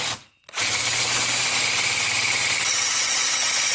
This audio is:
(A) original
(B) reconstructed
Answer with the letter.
A